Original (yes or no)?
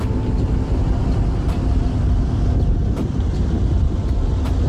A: yes